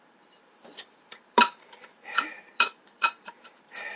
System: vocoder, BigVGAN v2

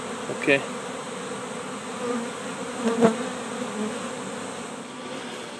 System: none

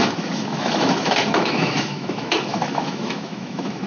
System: autoencoder, DAC-VAE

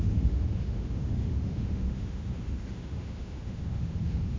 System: autoencoder, DAC-VAE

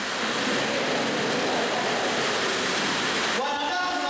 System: none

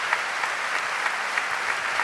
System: none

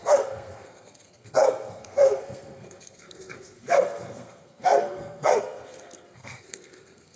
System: codec, SNAC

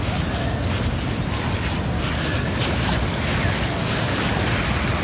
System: none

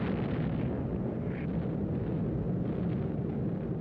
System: none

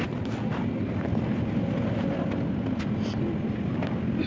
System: none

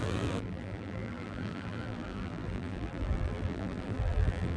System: vocoder, BigVGAN v2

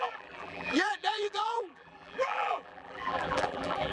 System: vocoder, BigVGAN v2